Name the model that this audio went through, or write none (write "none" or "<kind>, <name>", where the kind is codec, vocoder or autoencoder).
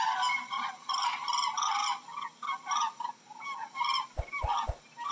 none